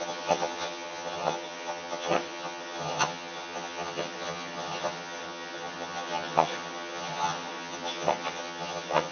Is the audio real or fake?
fake